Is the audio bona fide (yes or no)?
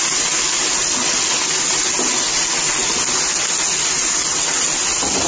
yes